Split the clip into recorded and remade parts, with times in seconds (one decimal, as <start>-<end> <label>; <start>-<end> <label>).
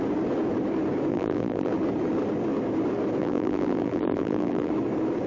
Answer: 0.0-1.1 recorded; 1.1-1.7 remade; 1.7-3.2 recorded; 3.2-4.7 remade; 4.7-5.3 recorded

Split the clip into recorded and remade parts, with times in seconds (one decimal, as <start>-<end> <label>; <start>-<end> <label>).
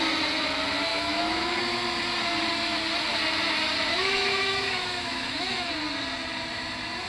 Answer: 0.0-0.9 recorded; 0.9-1.6 remade; 1.6-3.9 recorded; 3.9-5.7 remade; 5.7-7.1 recorded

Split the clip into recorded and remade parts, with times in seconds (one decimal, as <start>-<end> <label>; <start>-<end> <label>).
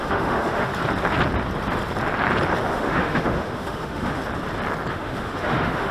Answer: 0.0-0.7 remade; 0.7-2.7 recorded; 2.7-4.2 remade; 4.2-4.9 recorded; 4.9-5.9 remade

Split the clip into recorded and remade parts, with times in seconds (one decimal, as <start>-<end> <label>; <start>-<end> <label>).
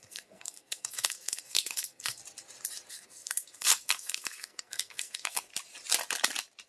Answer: 0.0-2.2 remade; 2.2-2.9 recorded; 2.9-5.5 remade; 5.5-6.7 recorded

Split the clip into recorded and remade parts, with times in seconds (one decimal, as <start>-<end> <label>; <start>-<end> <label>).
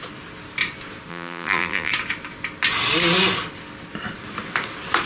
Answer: 0.0-1.1 recorded; 1.1-1.9 remade; 1.9-5.1 recorded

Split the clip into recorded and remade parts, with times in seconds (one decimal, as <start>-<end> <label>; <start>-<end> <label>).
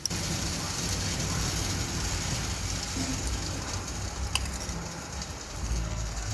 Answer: 0.0-5.6 recorded; 5.6-6.3 remade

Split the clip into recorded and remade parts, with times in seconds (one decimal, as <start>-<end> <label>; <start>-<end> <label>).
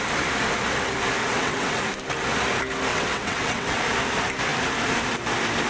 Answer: 0.0-1.2 recorded; 1.2-1.8 remade; 1.8-2.9 recorded; 2.9-3.8 remade; 3.8-5.7 recorded